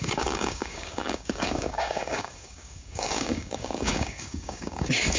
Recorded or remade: remade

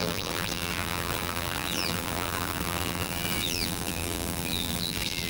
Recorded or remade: remade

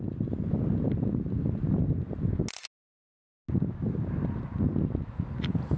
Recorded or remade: recorded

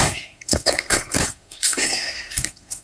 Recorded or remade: remade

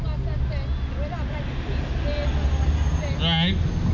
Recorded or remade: recorded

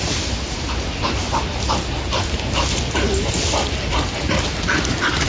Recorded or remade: recorded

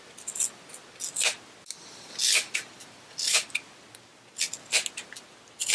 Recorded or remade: recorded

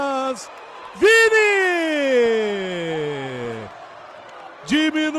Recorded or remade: recorded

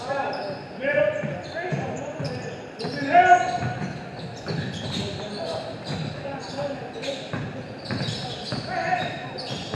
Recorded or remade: recorded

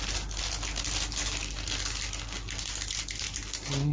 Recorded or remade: recorded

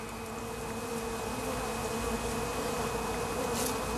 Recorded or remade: recorded